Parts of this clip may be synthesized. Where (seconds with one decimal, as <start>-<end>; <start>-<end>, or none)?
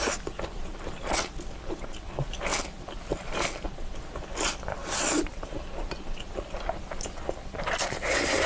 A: 2.5-3.1; 4.8-5.9